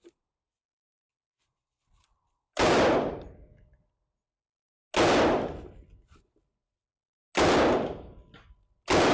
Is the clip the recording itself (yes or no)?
yes